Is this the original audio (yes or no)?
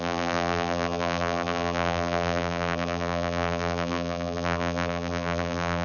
no